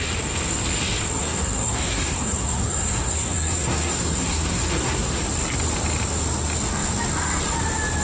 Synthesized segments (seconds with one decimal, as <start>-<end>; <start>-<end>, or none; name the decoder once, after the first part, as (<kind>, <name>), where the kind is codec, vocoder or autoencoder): 1.2-5.2 (codec, SNAC)